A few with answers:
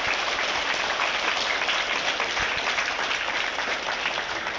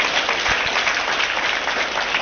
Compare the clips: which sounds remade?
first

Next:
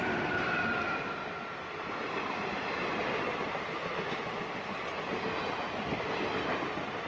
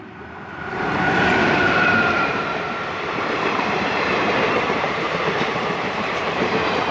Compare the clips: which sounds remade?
second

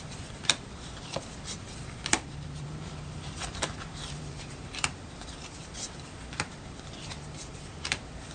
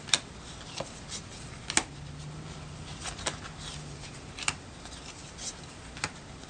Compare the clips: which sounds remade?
first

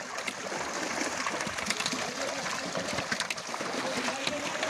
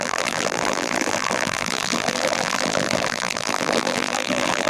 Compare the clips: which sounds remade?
second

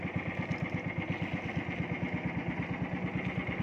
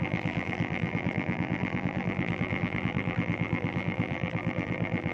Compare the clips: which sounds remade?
second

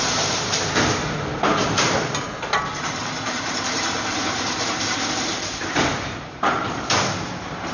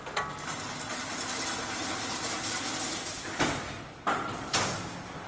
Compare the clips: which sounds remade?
first